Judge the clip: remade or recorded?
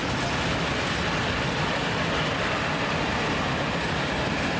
recorded